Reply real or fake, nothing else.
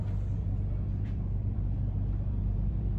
fake